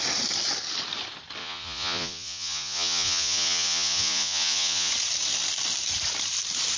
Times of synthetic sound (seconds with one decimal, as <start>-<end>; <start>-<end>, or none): 1.4-4.9